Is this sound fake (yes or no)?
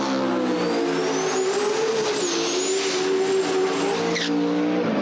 no